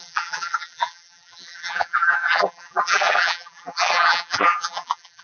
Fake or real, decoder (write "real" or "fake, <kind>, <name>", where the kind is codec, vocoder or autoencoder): fake, vocoder, BigVGAN v2